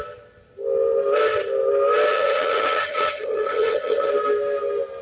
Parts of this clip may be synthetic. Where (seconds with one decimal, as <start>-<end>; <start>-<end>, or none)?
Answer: 2.1-4.1